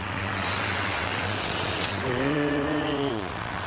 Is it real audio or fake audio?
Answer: fake